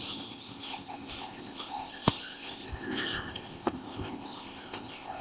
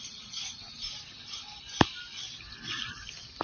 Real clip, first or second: second